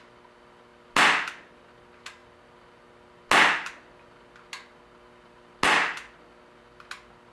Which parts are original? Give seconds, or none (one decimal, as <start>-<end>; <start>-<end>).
0.0-7.3